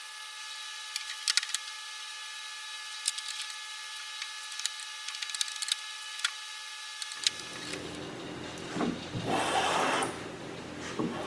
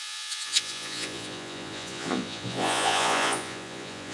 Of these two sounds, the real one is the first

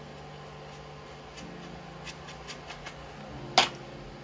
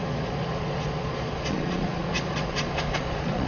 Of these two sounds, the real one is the first